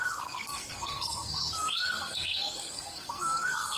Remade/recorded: remade